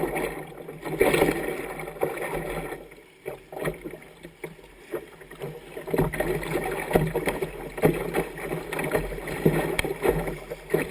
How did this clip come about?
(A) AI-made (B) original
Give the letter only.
B